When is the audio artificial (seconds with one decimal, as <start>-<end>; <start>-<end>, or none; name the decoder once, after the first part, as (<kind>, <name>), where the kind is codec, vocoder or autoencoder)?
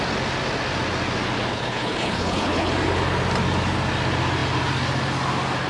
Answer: 1.5-2.7 (codec, HILCodec)